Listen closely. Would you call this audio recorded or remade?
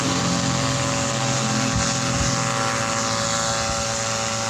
recorded